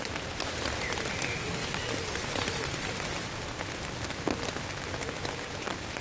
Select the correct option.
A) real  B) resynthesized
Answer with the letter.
A